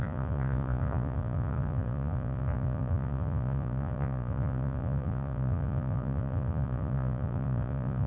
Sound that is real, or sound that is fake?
fake